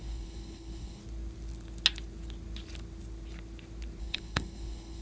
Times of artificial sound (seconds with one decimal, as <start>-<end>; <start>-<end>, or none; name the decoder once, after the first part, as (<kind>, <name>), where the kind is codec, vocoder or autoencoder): 0.0-1.0 (codec, HILCodec); 4.0-5.0